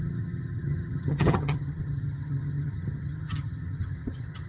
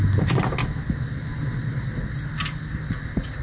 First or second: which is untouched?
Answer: second